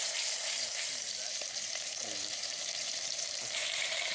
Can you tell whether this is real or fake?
fake